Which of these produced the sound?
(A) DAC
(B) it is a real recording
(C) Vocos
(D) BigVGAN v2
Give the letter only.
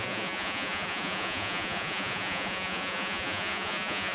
C